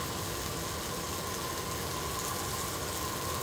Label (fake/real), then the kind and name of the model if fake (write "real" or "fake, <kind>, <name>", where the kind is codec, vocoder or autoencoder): real